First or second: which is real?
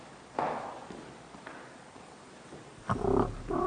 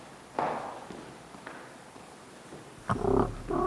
second